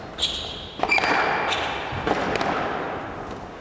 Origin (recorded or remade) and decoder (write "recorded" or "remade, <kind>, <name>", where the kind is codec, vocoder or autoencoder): recorded